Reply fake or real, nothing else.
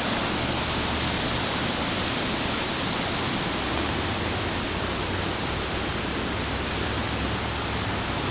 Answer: real